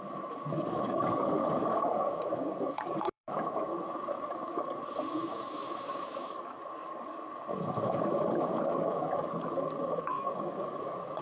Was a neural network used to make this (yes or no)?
yes